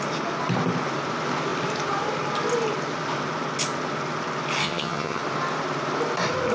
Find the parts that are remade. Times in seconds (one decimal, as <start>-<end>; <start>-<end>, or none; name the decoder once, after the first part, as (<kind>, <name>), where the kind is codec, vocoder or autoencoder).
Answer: 4.6-5.2 (vocoder, HiFi-GAN)